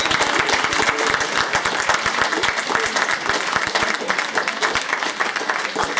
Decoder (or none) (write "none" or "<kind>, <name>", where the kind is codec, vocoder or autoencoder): none